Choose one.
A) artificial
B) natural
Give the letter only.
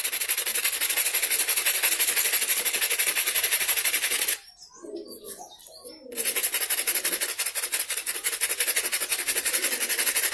B